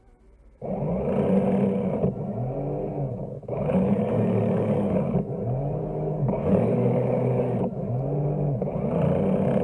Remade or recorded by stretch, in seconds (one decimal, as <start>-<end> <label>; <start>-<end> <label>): 0.0-2.8 recorded; 2.8-7.9 remade; 7.9-9.6 recorded